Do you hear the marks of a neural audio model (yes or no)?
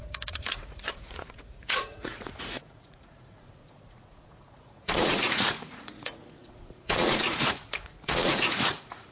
yes